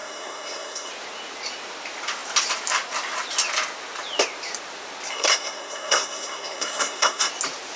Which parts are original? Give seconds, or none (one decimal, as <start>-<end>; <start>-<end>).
0.9-5.1; 7.3-7.8

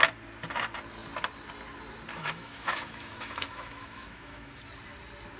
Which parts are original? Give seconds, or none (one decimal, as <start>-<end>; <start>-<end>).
0.0-2.1; 4.6-5.4